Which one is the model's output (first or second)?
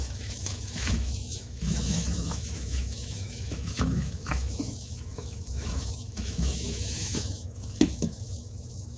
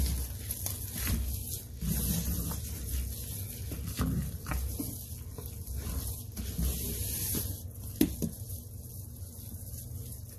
first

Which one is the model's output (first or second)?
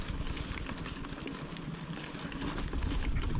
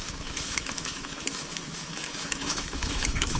second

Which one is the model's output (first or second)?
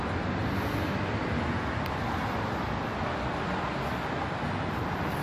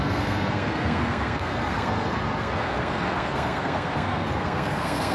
second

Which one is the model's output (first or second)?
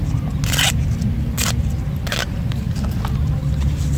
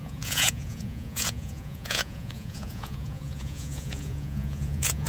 second